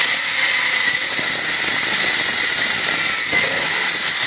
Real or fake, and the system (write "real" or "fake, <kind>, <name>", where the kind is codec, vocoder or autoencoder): real